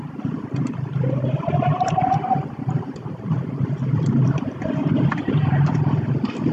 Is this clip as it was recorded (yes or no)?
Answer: no